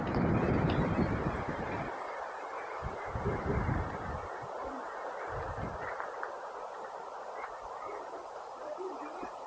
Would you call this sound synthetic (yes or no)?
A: yes